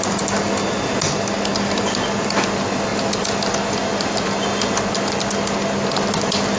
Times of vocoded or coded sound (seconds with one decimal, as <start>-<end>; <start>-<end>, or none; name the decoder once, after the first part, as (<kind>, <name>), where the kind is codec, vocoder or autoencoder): none